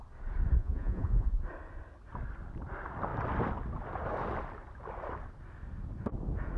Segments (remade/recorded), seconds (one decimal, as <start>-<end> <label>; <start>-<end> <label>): 0.0-0.6 recorded; 0.6-1.4 remade; 1.4-6.6 recorded